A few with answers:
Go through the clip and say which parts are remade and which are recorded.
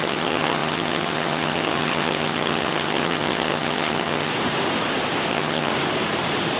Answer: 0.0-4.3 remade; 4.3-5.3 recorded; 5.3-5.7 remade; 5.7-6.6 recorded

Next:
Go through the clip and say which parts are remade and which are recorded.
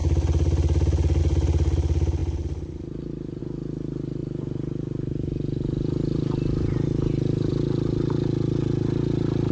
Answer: 0.0-9.5 recorded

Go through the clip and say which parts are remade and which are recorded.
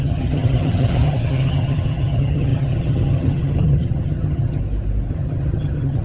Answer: 0.0-4.6 remade; 4.6-5.1 recorded; 5.1-6.0 remade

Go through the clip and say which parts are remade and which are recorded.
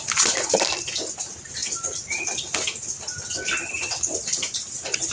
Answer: 0.0-5.1 recorded